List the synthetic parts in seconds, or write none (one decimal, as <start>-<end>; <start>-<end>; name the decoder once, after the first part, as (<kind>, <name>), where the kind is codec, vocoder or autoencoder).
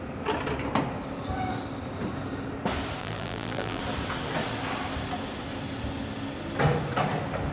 3.0-3.8 (vocoder, BigVGAN v2)